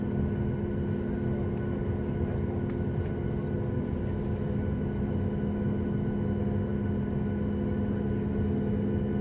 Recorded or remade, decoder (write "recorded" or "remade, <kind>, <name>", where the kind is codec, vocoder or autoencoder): recorded